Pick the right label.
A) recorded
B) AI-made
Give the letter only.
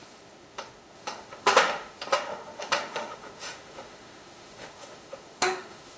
B